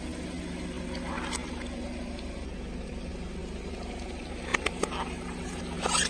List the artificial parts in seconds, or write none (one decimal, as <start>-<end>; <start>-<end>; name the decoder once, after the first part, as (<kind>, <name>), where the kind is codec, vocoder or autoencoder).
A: 4.5-5.6 (vocoder, BigVGAN v2)

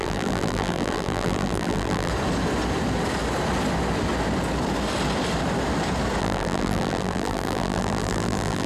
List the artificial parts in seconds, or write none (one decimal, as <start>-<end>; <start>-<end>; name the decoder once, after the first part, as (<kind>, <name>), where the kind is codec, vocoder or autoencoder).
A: 0.0-2.1 (vocoder, BigVGAN v2); 6.2-8.7

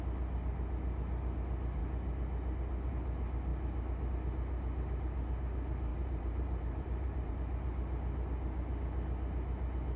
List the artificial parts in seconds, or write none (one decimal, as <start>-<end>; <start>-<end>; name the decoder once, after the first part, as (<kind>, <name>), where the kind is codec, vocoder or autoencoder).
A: 5.9-7.3 (vocoder, BigVGAN v2)

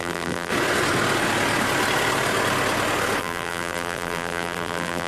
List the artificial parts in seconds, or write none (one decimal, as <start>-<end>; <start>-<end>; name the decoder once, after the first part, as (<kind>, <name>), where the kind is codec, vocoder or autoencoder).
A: 0.0-0.5 (vocoder, BigVGAN v2); 3.2-5.1